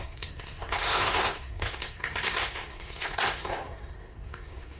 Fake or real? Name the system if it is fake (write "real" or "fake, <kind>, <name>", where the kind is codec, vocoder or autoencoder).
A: fake, codec, SNAC